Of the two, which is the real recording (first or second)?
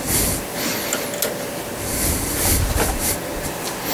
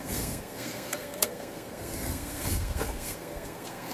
first